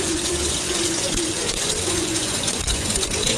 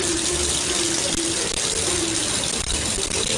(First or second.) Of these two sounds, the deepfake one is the first